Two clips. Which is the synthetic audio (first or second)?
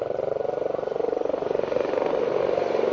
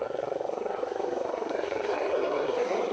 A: second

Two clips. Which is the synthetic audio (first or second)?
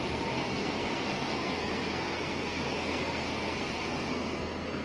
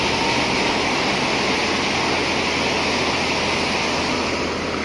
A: first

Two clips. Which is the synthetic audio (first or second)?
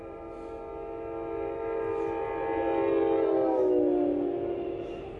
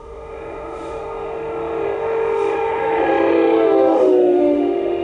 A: second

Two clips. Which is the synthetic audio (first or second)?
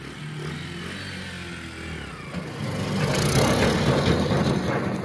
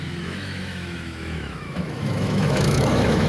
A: second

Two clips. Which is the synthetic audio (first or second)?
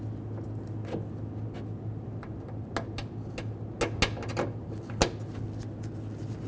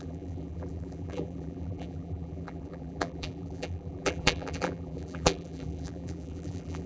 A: second